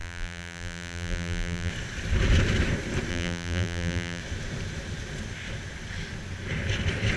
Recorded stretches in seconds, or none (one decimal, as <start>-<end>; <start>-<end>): 1.7-3.1; 4.2-7.2